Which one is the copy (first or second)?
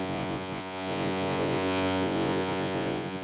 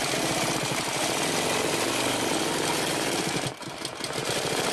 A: first